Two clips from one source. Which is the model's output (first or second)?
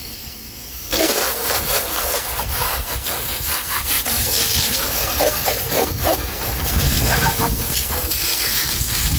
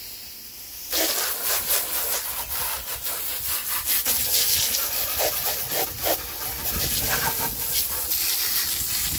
first